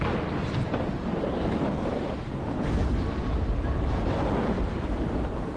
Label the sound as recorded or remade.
remade